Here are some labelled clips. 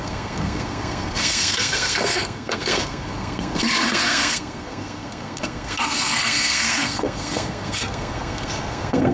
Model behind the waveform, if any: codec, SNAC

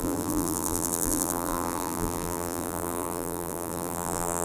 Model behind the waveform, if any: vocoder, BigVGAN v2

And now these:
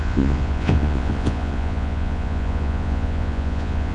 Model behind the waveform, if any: vocoder, Vocos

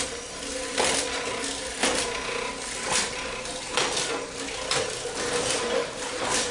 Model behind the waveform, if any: none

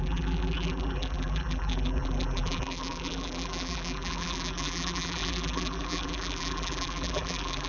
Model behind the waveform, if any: vocoder, BigVGAN v2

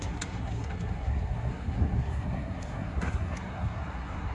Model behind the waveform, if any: codec, SNAC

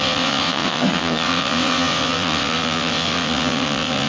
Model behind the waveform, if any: vocoder, WaveNeXt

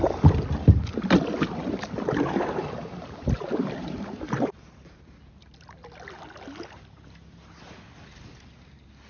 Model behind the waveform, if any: none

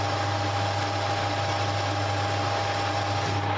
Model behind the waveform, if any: none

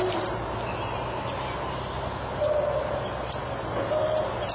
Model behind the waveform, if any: none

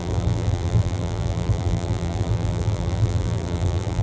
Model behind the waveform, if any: vocoder, BigVGAN v2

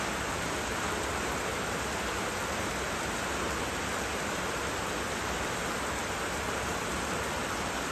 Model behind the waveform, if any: none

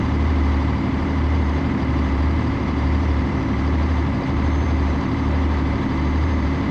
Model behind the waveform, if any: vocoder, BigVGAN v2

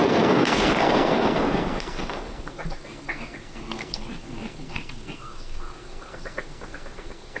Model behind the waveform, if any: codec, SNAC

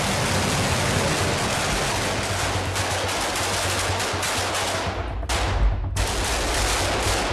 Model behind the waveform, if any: none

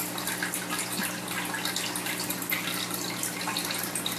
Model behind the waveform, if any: none